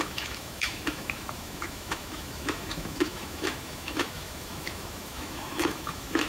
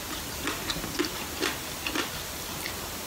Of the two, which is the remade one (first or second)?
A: first